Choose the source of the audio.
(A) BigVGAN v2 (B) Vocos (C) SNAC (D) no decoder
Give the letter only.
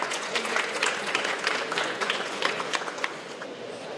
B